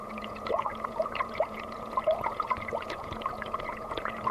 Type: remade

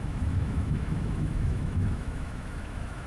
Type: remade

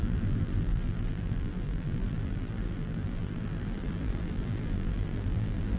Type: remade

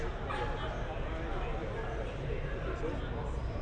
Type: recorded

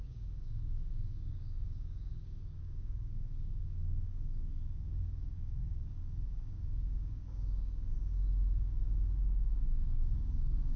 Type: remade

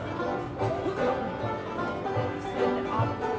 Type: recorded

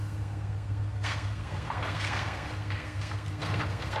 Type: remade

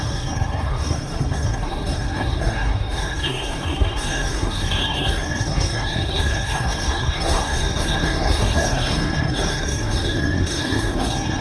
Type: remade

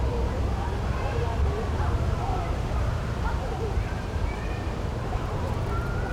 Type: remade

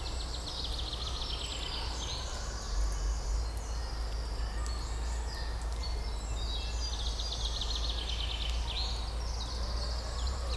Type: recorded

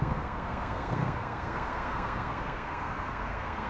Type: remade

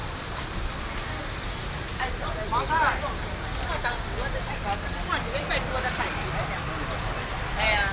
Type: recorded